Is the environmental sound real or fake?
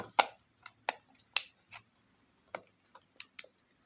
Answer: real